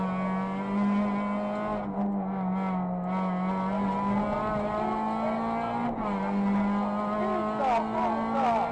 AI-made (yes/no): no